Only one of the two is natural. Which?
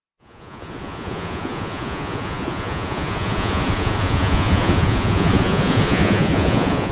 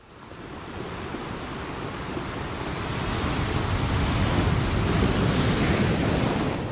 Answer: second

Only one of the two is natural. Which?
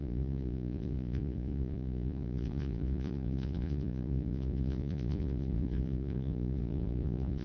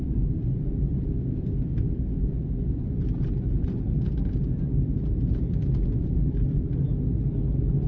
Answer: second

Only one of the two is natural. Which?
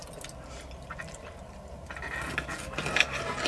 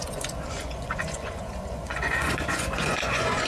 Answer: first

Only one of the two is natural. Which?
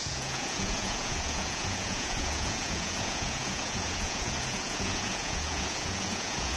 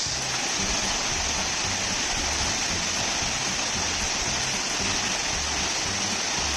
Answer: second